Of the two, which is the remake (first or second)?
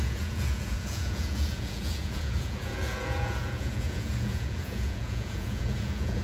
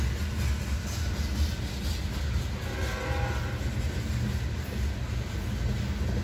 first